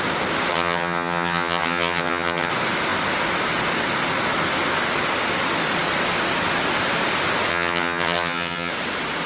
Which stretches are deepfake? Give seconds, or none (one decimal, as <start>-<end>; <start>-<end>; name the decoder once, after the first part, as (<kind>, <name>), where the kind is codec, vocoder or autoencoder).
0.5-2.5 (vocoder, HiFi-GAN); 7.5-8.7